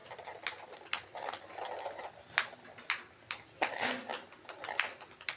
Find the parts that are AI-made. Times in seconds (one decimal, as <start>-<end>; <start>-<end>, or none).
none

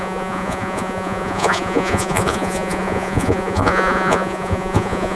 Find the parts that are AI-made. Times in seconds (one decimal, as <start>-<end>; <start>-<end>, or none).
0.0-5.2